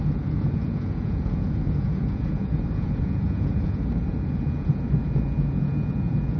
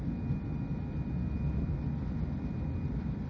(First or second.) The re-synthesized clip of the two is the first